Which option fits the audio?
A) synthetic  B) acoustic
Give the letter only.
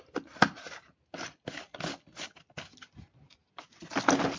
B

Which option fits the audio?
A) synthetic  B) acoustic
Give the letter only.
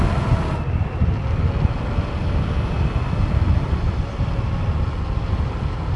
B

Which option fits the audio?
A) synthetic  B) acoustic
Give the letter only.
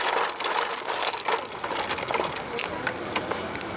B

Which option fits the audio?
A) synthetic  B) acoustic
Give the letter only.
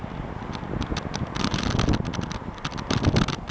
B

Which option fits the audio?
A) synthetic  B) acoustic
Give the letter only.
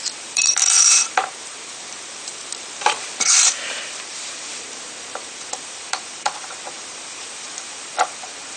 A